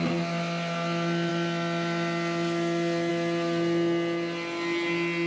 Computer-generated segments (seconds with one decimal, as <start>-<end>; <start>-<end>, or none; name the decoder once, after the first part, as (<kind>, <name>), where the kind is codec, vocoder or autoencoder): none